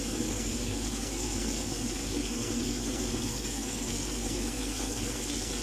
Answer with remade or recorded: remade